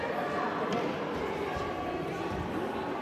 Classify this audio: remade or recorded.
recorded